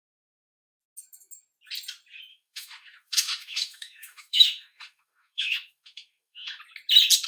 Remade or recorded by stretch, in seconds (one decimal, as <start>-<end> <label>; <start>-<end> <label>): 0.0-2.3 recorded; 2.3-6.6 remade; 6.6-7.3 recorded

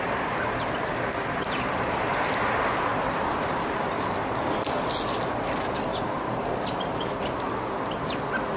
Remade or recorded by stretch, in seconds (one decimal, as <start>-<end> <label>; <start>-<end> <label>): 0.0-5.9 recorded; 5.9-6.9 remade; 6.9-8.6 recorded

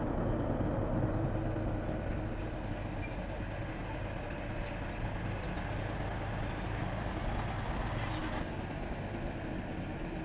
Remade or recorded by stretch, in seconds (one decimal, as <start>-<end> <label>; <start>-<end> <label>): 0.0-10.2 recorded

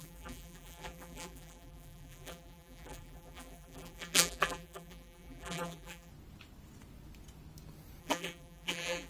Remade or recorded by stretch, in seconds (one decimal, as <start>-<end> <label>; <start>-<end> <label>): 0.0-6.1 remade; 6.1-8.0 recorded; 8.0-9.1 remade

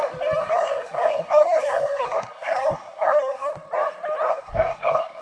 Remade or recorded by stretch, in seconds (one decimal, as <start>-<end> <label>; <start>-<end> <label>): 0.0-0.4 recorded; 0.4-3.5 remade; 3.5-4.3 recorded; 4.3-5.2 remade

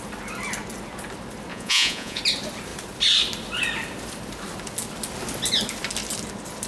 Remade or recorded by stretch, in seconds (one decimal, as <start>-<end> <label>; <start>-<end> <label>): 0.0-1.5 recorded; 1.5-2.2 remade; 2.2-6.7 recorded

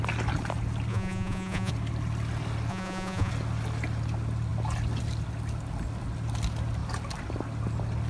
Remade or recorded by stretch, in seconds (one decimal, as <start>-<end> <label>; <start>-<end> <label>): 0.0-0.9 recorded; 0.9-1.7 remade; 1.7-2.7 recorded; 2.7-3.3 remade; 3.3-8.1 recorded

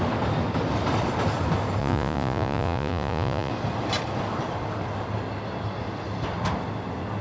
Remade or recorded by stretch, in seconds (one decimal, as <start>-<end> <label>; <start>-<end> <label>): 0.0-1.8 recorded; 1.8-3.5 remade; 3.5-7.2 recorded